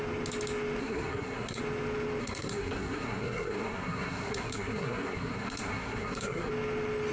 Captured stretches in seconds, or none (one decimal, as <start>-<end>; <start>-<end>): 0.0-0.8; 1.6-2.2; 6.5-7.1